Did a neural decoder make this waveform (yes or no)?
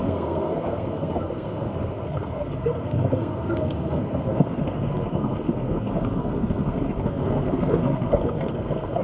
yes